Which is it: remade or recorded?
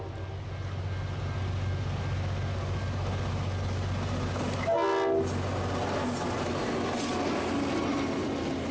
recorded